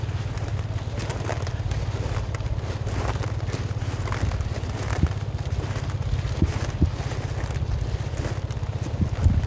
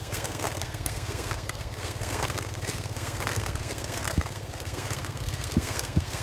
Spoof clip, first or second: second